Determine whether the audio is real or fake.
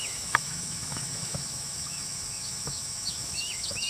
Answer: fake